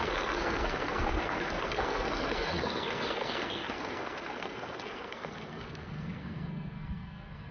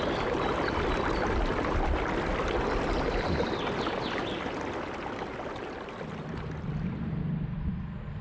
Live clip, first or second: second